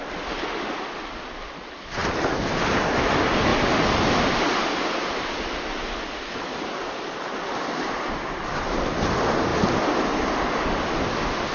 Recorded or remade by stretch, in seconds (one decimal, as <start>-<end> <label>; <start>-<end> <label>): 0.0-11.5 recorded